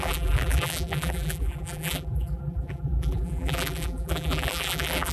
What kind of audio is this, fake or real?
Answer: fake